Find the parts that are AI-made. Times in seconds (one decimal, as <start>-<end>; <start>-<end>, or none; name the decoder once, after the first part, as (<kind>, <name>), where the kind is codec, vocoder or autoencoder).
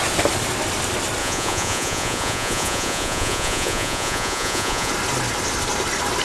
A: 1.2-4.9 (vocoder, Vocos)